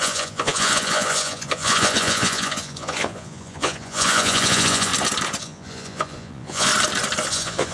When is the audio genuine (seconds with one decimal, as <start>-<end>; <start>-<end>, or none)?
4.9-5.4; 6.7-7.3